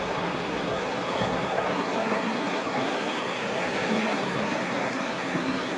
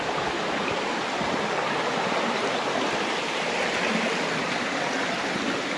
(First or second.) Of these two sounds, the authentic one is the second